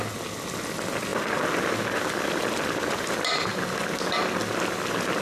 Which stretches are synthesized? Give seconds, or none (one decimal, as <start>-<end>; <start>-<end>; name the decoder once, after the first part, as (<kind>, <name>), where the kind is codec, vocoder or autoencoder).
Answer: none